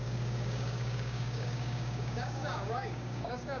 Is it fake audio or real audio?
fake